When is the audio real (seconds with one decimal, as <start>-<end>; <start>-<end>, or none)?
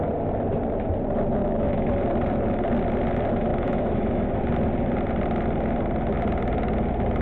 0.0-1.4; 1.9-3.5; 4.4-7.2